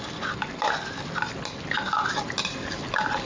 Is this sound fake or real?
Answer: real